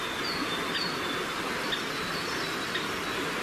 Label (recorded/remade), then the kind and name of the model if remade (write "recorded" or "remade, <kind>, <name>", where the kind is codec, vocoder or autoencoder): recorded